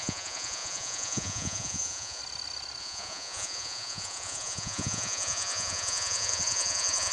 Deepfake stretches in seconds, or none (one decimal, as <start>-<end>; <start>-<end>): 0.0-2.2; 2.8-7.1